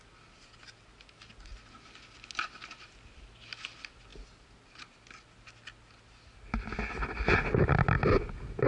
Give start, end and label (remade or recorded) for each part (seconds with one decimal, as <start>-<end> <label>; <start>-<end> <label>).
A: 0.0-8.7 recorded